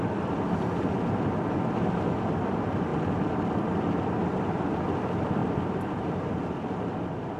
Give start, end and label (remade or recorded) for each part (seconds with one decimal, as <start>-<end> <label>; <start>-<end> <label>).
0.0-5.4 recorded; 5.4-6.4 remade; 6.4-7.4 recorded